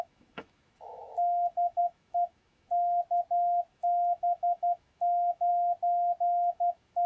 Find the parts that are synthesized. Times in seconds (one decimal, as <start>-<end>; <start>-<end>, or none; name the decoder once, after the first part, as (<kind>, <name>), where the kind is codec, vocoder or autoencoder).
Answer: 0.0-2.7 (autoencoder, DAC-VAE); 3.7-5.5; 6.2-7.1